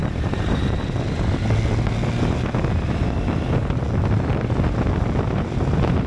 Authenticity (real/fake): real